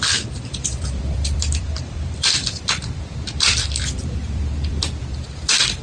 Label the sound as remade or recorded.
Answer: remade